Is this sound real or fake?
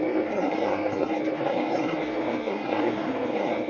fake